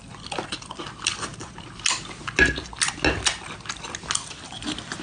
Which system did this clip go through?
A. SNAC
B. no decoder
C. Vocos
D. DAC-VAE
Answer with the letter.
B